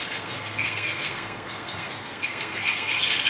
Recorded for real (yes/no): no